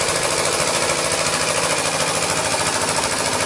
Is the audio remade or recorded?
recorded